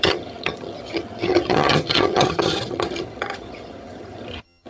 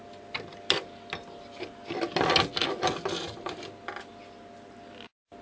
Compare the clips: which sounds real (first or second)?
second